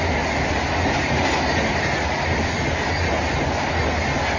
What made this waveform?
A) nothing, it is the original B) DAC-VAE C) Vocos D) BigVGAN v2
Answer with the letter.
A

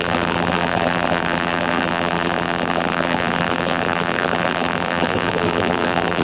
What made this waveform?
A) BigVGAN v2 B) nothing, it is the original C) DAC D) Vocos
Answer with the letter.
A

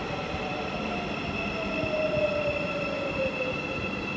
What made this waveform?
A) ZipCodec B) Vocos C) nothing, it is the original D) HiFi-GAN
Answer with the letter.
C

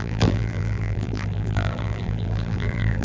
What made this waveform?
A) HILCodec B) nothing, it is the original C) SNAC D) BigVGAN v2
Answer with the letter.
D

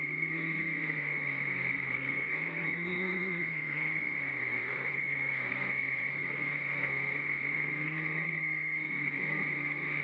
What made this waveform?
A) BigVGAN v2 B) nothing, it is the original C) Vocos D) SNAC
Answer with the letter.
D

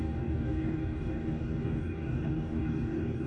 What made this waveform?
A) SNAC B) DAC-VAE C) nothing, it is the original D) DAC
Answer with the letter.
D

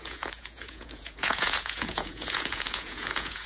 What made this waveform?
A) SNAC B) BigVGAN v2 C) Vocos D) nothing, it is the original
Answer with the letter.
C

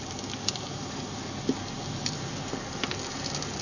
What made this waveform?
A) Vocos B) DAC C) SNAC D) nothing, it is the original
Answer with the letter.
D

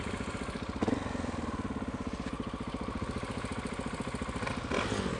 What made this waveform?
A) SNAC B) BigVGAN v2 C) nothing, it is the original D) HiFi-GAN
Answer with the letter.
C